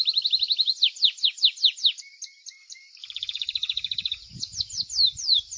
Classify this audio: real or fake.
real